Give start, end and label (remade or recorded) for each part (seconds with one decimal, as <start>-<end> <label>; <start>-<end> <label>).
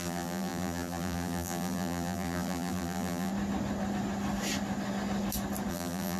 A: 0.0-3.3 remade; 3.3-5.7 recorded; 5.7-6.2 remade